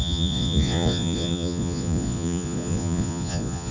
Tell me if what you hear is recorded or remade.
remade